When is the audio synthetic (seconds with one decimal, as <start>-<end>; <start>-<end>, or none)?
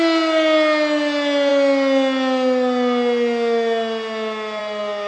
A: none